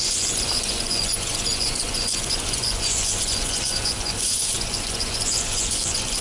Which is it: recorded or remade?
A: remade